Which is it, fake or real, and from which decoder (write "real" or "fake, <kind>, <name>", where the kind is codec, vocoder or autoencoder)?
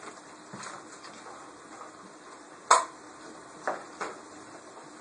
real